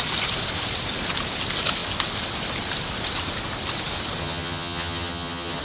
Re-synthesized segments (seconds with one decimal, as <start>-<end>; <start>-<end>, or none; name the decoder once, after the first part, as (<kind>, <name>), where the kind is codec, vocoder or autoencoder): 4.2-5.6 (vocoder, HiFi-GAN)